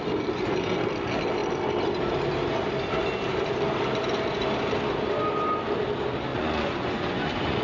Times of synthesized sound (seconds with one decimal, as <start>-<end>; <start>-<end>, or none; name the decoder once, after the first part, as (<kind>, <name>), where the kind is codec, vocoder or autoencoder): 6.3-7.6 (vocoder, Vocos)